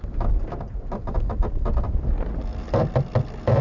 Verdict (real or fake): real